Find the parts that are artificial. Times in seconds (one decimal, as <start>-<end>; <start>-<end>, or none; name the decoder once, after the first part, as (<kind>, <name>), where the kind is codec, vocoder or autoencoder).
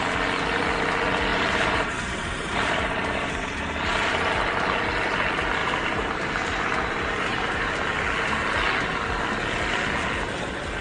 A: 1.3-4.3 (vocoder, BigVGAN v2); 5.6-7.7